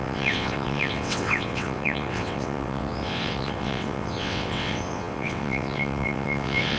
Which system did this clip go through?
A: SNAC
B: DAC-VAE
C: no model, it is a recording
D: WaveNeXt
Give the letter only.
D